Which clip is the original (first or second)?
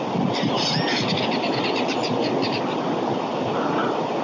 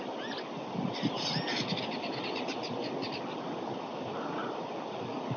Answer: first